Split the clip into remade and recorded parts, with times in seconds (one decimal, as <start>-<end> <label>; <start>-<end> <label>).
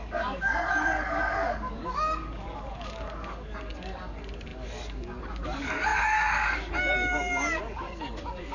0.0-8.5 remade